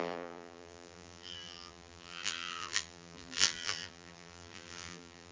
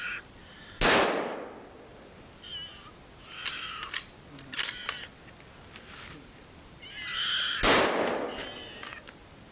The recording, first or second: second